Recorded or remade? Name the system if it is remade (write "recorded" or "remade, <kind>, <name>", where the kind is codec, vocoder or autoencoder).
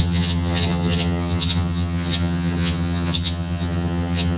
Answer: remade, vocoder, HiFi-GAN